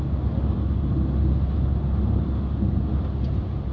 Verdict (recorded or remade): recorded